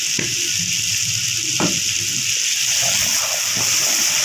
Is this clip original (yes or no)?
yes